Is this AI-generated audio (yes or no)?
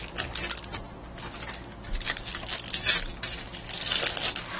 no